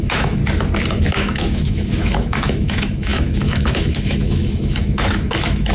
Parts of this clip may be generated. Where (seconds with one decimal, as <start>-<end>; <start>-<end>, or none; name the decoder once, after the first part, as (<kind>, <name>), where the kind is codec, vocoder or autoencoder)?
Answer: 0.0-0.4 (autoencoder, DAC-VAE); 1.0-5.7